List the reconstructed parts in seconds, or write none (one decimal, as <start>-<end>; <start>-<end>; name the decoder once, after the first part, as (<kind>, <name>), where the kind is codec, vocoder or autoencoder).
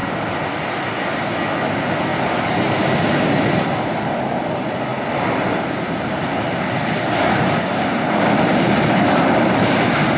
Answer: 2.1-4.0 (vocoder, BigVGAN v2); 4.9-8.7